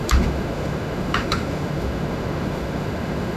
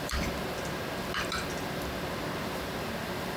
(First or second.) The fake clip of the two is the first